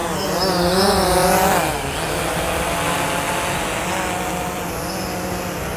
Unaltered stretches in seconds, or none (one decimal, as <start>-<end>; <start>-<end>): 0.0-5.8